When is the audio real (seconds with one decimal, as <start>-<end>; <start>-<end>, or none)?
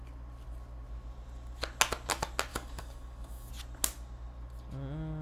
0.0-2.5; 3.5-5.2